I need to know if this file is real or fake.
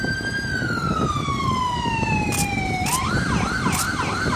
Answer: real